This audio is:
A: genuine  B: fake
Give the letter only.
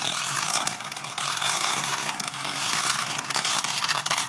B